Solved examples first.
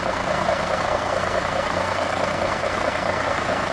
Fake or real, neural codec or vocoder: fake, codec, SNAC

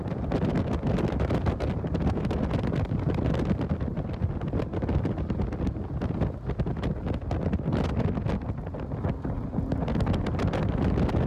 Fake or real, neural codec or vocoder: real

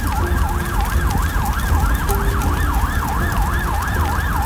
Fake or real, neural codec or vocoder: real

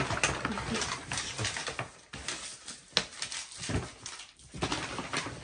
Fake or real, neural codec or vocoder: real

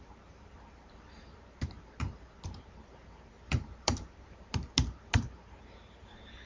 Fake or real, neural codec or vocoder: fake, vocoder, BigVGAN v2